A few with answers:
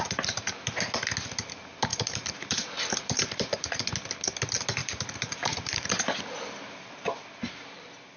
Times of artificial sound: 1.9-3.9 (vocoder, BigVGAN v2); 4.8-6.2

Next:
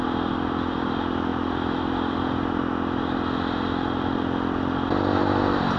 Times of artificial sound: none

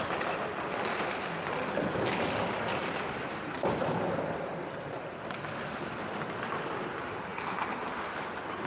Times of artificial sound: none